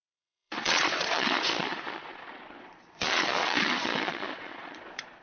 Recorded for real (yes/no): no